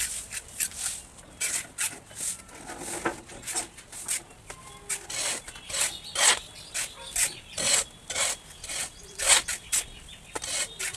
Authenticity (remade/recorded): recorded